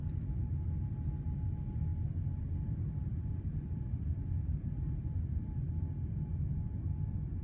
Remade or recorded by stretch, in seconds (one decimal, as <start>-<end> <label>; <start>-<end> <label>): 0.0-1.9 recorded; 1.9-6.3 remade; 6.3-7.4 recorded

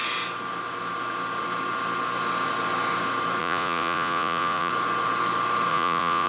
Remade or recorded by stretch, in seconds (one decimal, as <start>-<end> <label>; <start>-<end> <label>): 0.0-3.4 recorded; 3.4-4.7 remade; 4.7-5.7 recorded; 5.7-6.3 remade

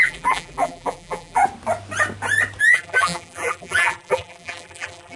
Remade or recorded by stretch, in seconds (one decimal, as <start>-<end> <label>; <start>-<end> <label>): 0.0-1.4 remade; 1.4-2.6 recorded; 2.6-5.2 remade

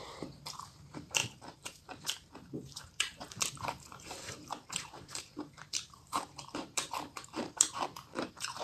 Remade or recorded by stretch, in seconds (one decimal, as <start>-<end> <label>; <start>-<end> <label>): 0.0-8.6 remade

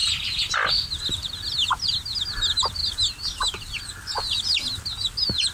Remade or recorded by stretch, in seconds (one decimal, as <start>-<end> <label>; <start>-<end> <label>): 0.0-5.5 recorded

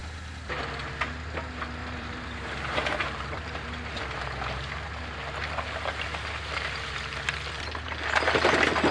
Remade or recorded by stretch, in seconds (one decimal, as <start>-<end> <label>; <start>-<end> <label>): 0.0-1.8 recorded; 1.8-4.0 remade; 4.0-8.9 recorded